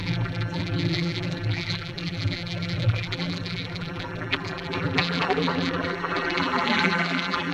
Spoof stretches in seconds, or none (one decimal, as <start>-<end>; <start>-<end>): 0.0-7.5